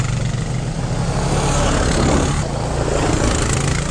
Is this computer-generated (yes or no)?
no